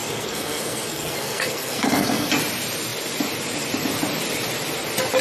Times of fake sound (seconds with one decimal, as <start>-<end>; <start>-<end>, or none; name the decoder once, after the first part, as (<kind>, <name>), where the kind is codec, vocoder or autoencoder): 0.0-2.3 (codec, SNAC)